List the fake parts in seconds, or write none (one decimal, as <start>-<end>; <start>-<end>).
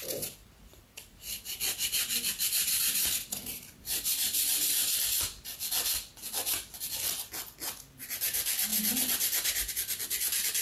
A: 0.7-4.9; 8.7-9.7